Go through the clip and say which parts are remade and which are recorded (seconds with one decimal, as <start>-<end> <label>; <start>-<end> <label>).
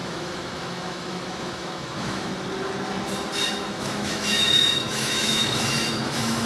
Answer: 0.0-2.3 remade; 2.3-3.5 recorded; 3.5-6.4 remade